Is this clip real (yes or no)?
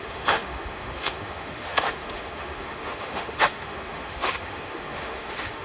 no